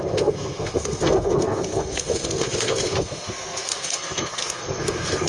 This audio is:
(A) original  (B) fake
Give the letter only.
B